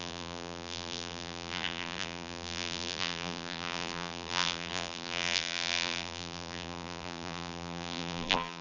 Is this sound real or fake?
fake